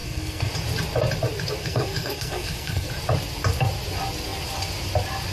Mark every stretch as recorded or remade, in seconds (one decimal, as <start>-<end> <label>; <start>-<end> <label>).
0.0-0.5 remade; 0.5-1.6 recorded; 1.6-2.9 remade; 2.9-5.3 recorded